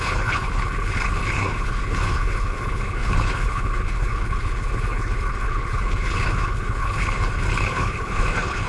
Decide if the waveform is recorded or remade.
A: remade